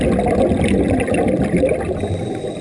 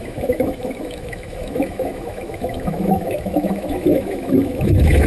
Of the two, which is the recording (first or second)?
first